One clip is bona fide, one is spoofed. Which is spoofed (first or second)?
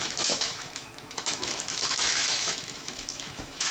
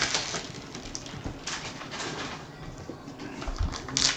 first